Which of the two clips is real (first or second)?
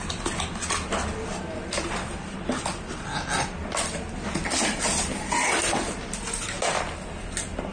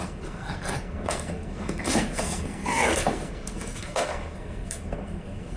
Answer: first